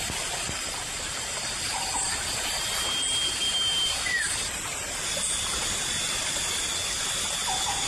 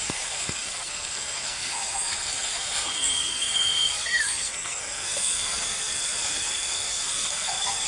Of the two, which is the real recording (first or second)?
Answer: first